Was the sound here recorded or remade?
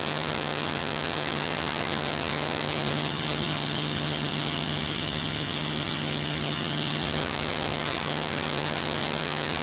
remade